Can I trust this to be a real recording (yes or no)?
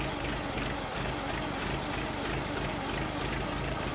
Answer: yes